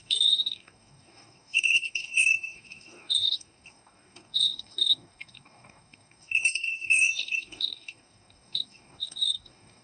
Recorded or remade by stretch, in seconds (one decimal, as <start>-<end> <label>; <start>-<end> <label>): 0.0-9.8 remade